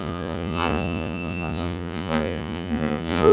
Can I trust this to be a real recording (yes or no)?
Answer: no